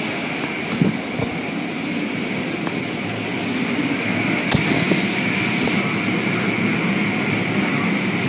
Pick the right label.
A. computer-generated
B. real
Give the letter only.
B